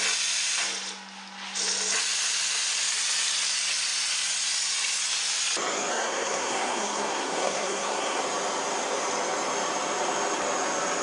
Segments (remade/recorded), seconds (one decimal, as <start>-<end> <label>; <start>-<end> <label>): 0.0-5.9 recorded; 5.9-8.2 remade; 8.2-11.0 recorded